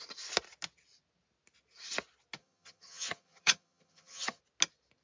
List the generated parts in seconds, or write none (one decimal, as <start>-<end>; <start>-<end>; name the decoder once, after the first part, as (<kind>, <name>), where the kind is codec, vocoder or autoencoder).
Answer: 2.4-4.4 (vocoder, HiFi-GAN)